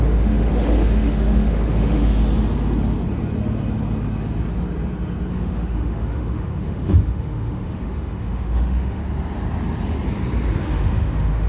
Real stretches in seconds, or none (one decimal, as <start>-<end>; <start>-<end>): 2.2-5.3; 9.0-10.6